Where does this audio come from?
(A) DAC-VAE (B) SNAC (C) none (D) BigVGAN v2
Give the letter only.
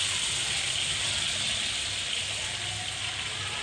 C